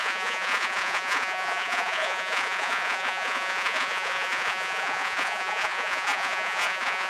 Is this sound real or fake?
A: fake